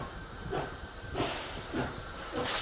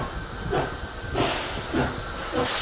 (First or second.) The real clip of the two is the second